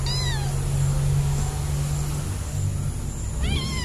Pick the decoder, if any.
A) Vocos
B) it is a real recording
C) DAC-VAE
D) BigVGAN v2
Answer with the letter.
B